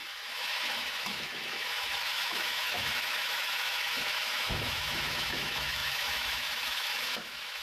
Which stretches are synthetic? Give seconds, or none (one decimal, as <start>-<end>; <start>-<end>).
0.0-7.6